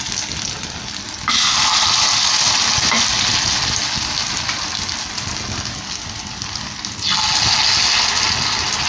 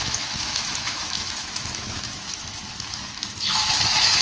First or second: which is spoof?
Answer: second